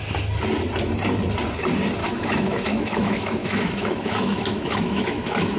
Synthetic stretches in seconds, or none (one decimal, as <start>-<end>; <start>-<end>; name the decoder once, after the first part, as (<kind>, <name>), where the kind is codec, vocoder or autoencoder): 2.0-5.6 (autoencoder, DAC-VAE)

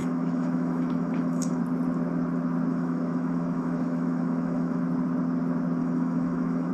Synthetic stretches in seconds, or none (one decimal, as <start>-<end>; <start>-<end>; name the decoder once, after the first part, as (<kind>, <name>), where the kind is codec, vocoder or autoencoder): 0.0-1.6 (autoencoder, DAC-VAE); 2.7-4.8; 5.8-6.7

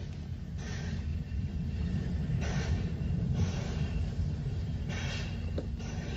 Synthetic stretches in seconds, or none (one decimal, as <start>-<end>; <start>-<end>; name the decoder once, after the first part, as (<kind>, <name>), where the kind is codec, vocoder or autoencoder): 1.1-4.8 (vocoder, BigVGAN v2)

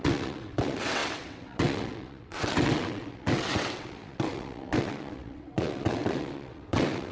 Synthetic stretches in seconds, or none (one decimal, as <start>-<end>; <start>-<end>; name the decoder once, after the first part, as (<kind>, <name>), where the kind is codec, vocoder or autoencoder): 0.0-7.1 (vocoder, WaveNeXt)

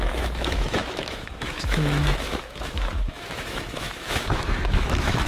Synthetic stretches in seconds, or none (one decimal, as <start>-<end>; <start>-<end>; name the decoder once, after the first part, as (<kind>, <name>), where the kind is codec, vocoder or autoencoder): 0.0-5.3 (autoencoder, DAC-VAE)

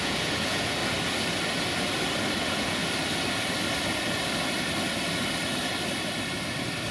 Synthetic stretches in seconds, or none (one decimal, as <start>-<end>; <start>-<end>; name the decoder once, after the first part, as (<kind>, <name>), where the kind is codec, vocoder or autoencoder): 0.0-0.8 (vocoder, Vocos); 2.4-2.8